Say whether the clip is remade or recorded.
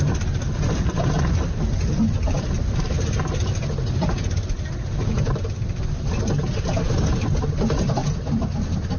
recorded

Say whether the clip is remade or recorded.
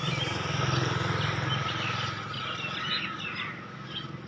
recorded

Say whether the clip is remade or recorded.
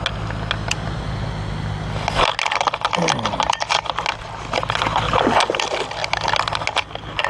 recorded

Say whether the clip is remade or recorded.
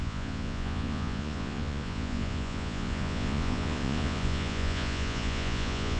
remade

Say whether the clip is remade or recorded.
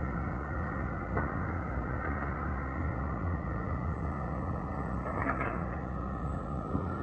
remade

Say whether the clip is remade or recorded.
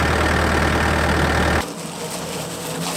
recorded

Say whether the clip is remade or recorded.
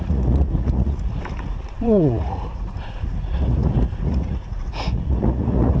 remade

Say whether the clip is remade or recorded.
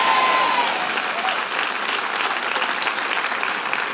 recorded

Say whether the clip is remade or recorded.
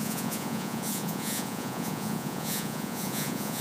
remade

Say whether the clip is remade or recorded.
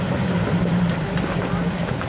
recorded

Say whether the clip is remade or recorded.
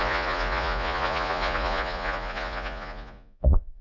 remade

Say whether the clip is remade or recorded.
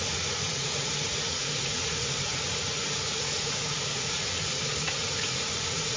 remade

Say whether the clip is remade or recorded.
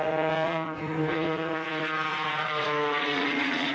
remade